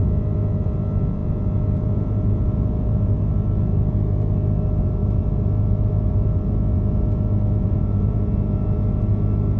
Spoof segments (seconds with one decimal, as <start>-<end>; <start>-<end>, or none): 1.2-3.2; 6.7-9.0